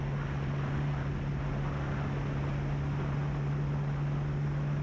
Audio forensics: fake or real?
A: real